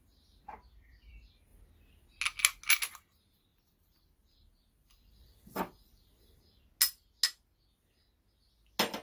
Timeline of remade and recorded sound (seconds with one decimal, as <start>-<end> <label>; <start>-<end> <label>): 0.0-3.5 recorded; 3.5-6.4 remade; 6.4-9.0 recorded